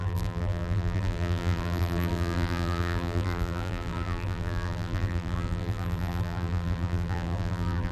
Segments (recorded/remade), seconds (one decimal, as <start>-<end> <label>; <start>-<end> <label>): 0.0-7.9 remade